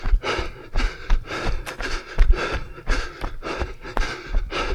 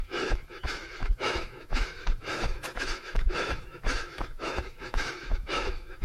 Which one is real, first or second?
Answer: first